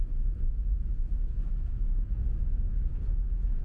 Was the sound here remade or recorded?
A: remade